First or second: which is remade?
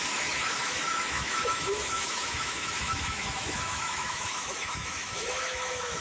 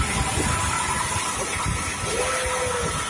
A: first